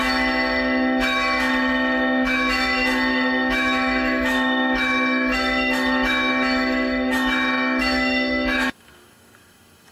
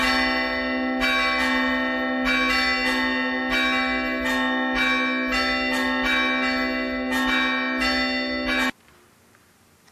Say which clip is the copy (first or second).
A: first